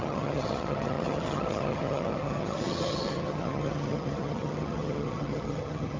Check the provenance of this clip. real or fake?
fake